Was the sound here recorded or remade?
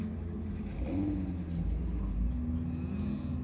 recorded